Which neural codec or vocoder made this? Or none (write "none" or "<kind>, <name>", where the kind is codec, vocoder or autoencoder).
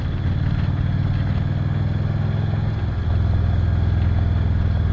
none